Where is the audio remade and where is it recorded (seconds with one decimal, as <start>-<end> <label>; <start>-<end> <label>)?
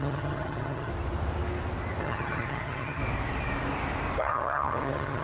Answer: 0.0-0.9 remade; 0.9-2.0 recorded; 2.0-3.0 remade; 3.0-4.2 recorded; 4.2-5.2 remade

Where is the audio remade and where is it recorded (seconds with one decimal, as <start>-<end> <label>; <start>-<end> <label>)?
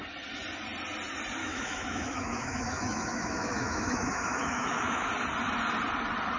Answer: 0.0-1.4 recorded; 1.4-5.1 remade; 5.1-6.4 recorded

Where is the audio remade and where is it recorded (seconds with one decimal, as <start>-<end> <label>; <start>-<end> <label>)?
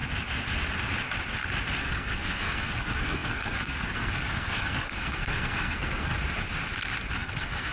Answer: 0.0-1.8 recorded; 1.8-6.1 remade; 6.1-7.1 recorded; 7.1-7.7 remade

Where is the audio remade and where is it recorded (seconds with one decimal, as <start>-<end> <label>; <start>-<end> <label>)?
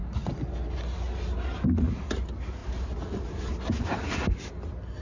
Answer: 0.0-5.0 recorded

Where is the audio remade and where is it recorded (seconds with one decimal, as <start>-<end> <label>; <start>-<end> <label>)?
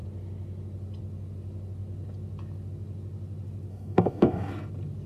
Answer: 0.0-3.7 recorded; 3.7-4.5 remade; 4.5-5.1 recorded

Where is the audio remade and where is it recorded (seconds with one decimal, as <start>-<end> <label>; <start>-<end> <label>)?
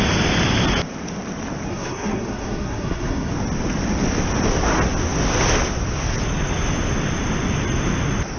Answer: 0.0-1.7 recorded; 1.7-3.3 remade; 3.3-8.4 recorded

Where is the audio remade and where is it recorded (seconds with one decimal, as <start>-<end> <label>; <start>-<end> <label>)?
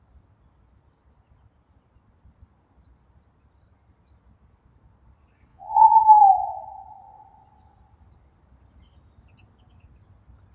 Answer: 0.0-5.5 recorded; 5.5-6.0 remade; 6.0-10.5 recorded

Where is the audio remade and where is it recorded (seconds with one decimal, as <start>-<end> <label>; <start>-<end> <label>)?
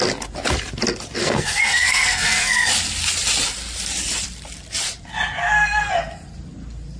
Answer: 0.0-1.2 recorded; 1.2-2.7 remade; 2.7-5.4 recorded; 5.4-5.9 remade; 5.9-7.0 recorded